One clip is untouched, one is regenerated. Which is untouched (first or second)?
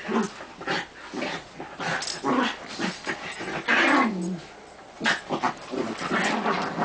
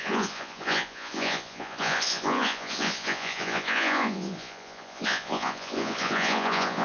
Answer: first